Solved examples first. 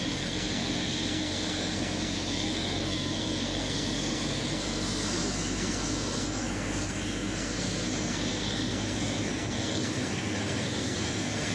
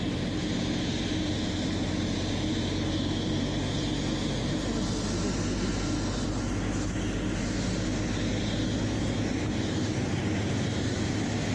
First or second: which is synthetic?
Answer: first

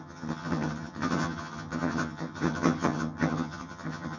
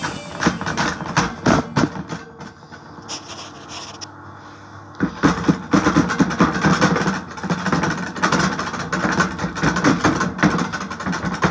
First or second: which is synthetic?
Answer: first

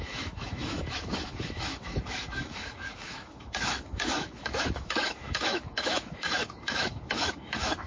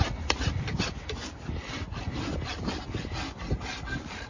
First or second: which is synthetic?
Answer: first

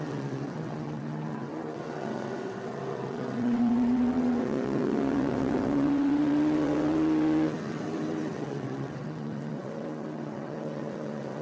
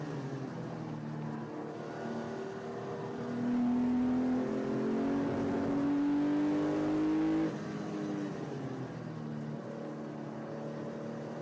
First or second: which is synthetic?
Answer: first